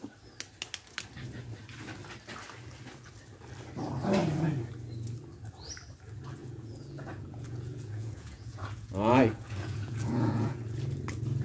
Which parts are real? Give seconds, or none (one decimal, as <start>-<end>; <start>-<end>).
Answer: 0.0-6.4; 10.6-11.4